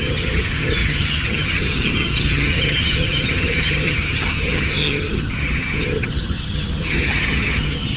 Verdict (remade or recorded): remade